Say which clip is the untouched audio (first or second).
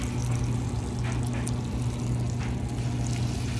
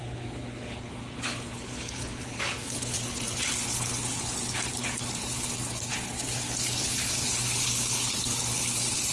first